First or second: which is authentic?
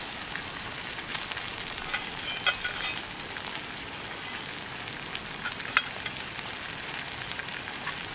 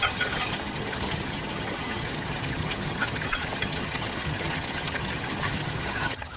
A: first